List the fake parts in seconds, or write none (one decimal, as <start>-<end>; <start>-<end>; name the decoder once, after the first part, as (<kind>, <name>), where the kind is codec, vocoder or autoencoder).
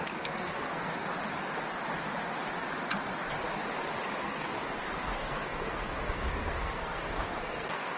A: 0.0-1.1 (codec, SNAC); 4.2-8.0